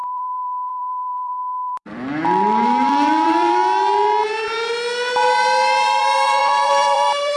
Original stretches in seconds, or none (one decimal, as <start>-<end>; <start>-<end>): 3.6-6.0